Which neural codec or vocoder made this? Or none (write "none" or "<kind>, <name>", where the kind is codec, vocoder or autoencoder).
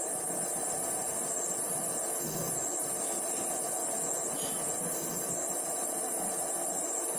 none